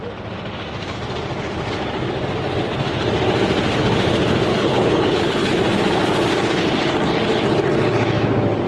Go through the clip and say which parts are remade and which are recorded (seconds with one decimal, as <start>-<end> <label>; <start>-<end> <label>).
0.0-4.5 recorded; 4.5-5.5 remade; 5.5-8.7 recorded